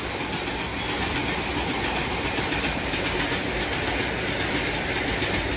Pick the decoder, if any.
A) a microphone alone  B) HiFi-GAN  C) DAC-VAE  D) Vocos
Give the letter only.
A